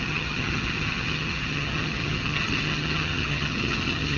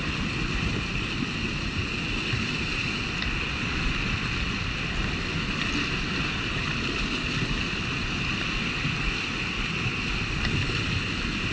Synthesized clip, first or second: first